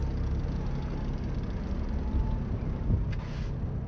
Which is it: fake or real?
real